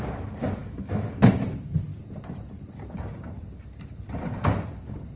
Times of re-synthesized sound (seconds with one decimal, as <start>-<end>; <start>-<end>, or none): 0.6-1.4